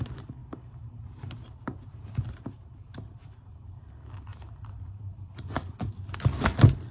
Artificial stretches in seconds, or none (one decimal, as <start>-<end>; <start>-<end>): 0.4-3.9; 4.3-5.9